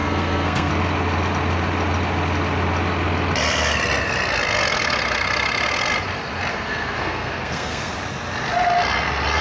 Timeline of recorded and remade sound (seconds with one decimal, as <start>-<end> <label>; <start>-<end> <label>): 0.0-0.7 remade; 0.7-6.5 recorded; 6.5-7.9 remade; 7.9-9.4 recorded